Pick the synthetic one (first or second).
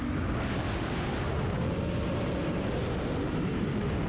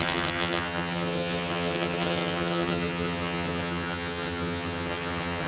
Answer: second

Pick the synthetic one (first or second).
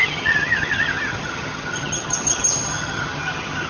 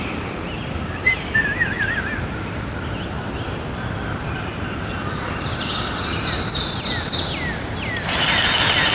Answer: first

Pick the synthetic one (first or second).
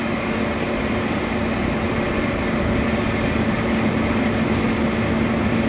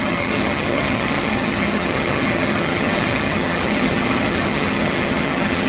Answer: second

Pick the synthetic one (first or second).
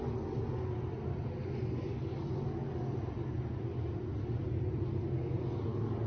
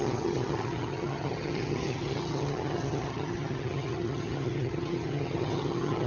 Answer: second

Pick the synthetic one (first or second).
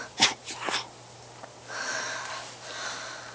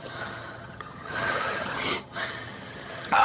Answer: second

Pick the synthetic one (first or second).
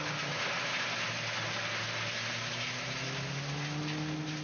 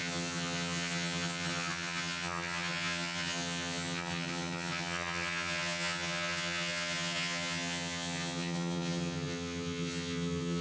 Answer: second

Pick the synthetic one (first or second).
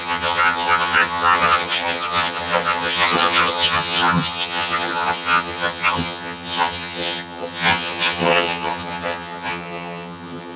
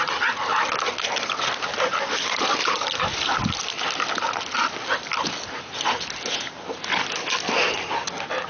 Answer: first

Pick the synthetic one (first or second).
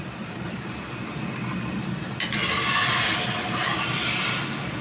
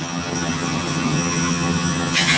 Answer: second